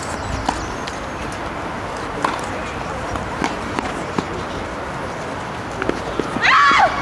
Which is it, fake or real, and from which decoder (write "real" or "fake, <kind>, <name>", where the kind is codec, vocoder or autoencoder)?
real